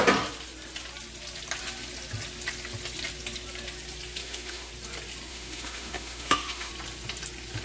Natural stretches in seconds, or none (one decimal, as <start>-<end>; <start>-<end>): 0.0-4.2; 4.7-5.3; 6.7-7.6